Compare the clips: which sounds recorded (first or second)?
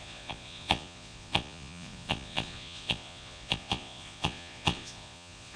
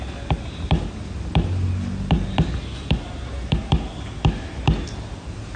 second